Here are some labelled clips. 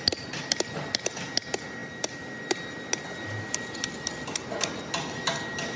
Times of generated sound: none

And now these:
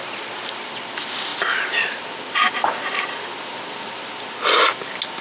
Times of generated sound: none

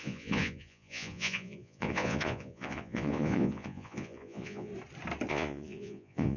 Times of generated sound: 0.0-4.7 (vocoder, Vocos); 5.3-6.4